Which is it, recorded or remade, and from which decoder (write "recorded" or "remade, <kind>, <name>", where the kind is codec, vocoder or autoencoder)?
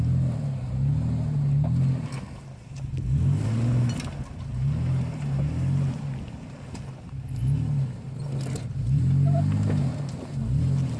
recorded